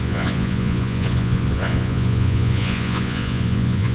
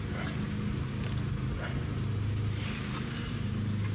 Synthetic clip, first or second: first